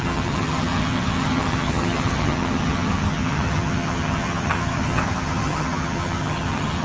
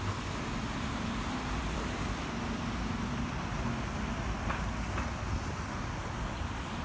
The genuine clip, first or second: second